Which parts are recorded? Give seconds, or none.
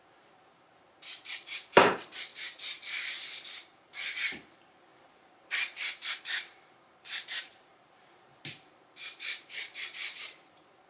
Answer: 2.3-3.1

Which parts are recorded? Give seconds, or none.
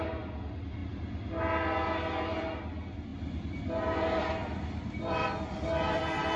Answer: 0.0-4.4; 6.0-6.4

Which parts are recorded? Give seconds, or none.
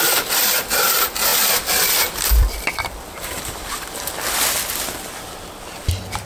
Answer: 0.0-1.3; 4.4-6.3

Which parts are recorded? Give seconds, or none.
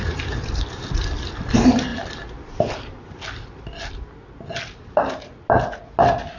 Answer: 0.0-1.9; 3.9-6.4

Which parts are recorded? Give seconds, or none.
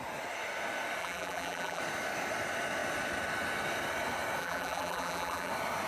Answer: 0.0-1.0; 1.8-4.4; 5.5-5.9